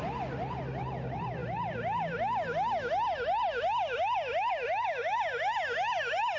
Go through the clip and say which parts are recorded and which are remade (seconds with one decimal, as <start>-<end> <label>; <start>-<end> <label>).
0.0-6.4 recorded